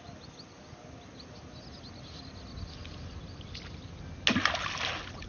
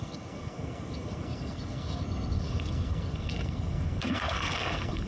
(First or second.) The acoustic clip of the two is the first